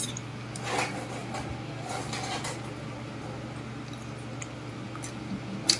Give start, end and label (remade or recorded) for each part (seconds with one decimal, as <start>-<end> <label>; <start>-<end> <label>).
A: 0.0-5.8 recorded